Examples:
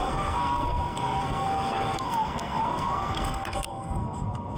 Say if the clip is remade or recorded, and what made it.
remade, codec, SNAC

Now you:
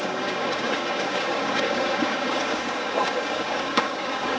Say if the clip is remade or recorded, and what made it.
remade, codec, DAC